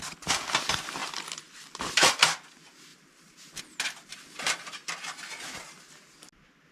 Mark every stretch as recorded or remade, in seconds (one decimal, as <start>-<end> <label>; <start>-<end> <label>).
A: 0.0-1.0 recorded; 1.0-2.1 remade; 2.1-2.9 recorded; 2.9-3.6 remade; 3.6-6.7 recorded